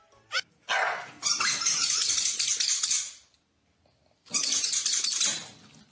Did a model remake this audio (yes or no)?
no